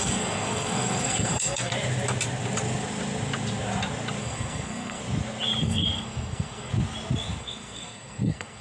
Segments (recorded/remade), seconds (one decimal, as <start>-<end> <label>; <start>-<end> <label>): 0.0-1.7 remade; 1.7-4.2 recorded; 4.2-5.0 remade; 5.0-5.6 recorded; 5.6-6.7 remade; 6.7-7.4 recorded; 7.4-8.6 remade